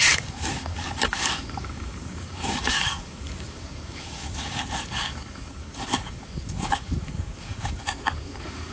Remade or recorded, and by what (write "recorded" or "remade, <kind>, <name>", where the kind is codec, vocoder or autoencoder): remade, codec, DAC